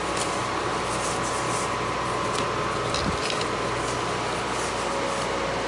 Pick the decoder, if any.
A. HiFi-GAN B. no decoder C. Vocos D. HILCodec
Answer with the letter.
B